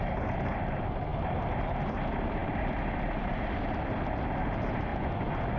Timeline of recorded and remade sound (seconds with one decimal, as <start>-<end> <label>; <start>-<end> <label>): 0.0-4.9 recorded; 4.9-5.6 remade